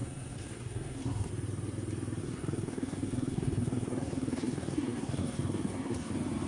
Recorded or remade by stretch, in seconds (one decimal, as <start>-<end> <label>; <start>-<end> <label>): 0.0-1.3 remade; 1.3-2.2 recorded; 2.2-6.1 remade; 6.1-6.5 recorded